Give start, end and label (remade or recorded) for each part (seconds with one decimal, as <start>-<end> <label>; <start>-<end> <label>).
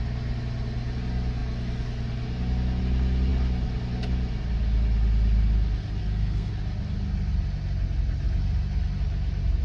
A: 0.0-6.0 recorded; 6.0-6.5 remade; 6.5-9.6 recorded